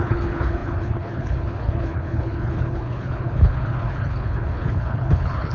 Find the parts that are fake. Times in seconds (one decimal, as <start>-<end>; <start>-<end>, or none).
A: 0.0-5.5